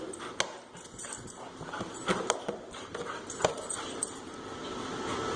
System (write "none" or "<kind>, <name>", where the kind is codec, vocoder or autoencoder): none